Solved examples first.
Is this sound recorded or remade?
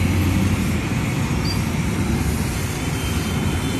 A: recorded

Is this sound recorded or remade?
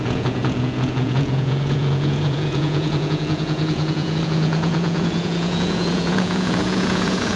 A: remade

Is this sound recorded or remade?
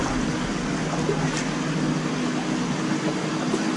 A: recorded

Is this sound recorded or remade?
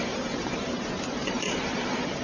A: remade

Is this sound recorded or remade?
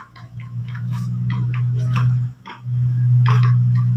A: remade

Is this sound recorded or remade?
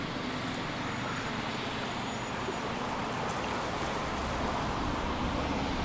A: recorded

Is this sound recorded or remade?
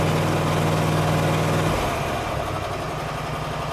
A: recorded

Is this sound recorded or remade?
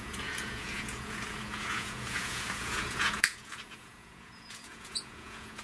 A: remade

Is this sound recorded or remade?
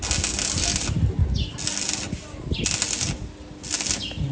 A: recorded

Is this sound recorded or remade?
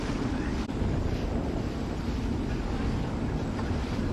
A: recorded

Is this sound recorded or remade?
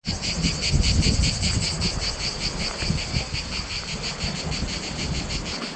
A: recorded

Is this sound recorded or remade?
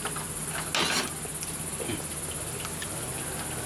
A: recorded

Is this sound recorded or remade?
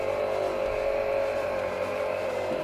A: recorded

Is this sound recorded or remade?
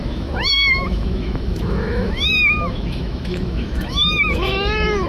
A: remade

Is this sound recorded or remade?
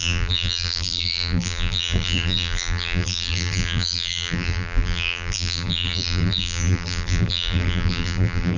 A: remade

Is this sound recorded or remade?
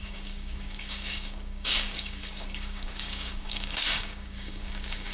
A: remade